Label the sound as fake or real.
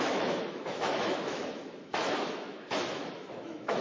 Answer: fake